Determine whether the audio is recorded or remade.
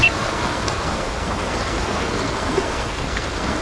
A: remade